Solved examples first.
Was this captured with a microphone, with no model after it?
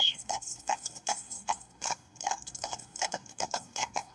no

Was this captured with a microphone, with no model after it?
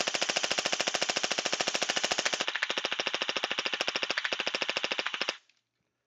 yes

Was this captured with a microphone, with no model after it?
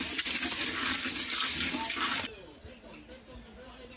yes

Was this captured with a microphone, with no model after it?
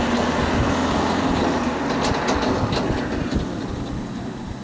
yes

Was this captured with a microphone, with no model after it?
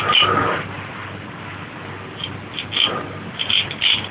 yes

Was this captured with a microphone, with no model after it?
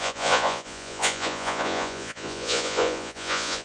no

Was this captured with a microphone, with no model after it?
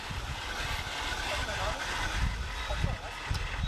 yes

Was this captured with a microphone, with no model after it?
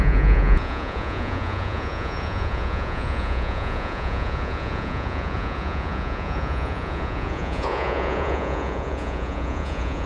no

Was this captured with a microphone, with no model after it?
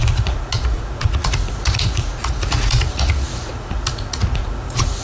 no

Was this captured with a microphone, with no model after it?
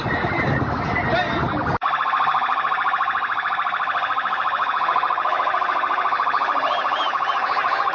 yes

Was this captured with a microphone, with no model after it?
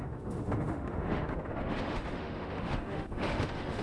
no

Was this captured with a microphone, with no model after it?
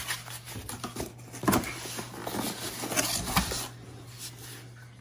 yes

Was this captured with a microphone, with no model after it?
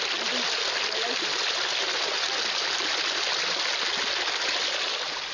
yes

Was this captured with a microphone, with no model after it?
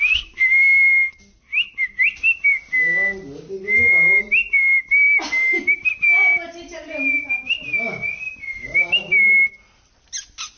yes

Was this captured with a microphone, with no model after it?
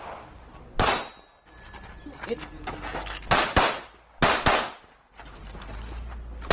yes